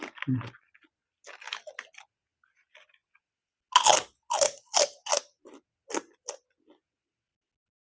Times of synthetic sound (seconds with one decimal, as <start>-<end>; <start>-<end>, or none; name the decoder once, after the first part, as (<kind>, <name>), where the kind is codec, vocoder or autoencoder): none